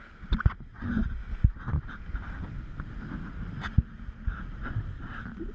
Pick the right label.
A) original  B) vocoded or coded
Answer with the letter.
A